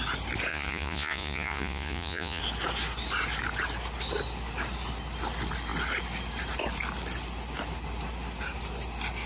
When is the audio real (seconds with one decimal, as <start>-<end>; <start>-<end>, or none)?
0.0-0.5; 2.4-9.3